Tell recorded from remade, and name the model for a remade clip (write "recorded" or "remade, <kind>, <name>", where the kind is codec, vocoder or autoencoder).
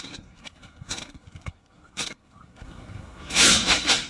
remade, codec, SNAC